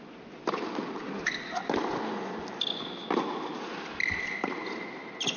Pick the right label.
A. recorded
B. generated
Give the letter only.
A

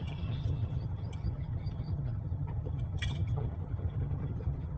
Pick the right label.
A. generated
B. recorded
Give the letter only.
A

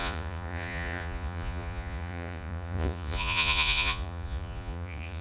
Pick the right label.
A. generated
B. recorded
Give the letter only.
A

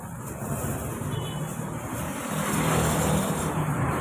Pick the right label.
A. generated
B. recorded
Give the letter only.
B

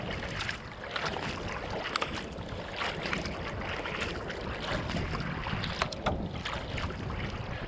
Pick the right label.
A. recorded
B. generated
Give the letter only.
A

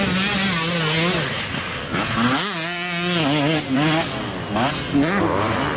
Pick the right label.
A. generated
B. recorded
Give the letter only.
B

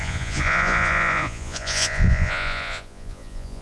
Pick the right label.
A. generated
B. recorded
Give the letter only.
A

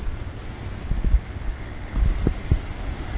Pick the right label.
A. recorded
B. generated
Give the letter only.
A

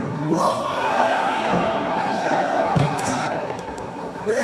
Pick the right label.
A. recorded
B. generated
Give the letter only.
B